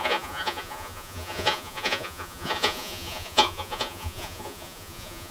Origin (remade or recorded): remade